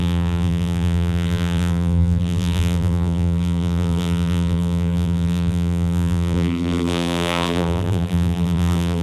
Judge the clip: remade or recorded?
remade